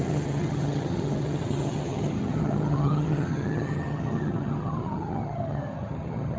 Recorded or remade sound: remade